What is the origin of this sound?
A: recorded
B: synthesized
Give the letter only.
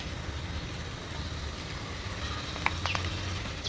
A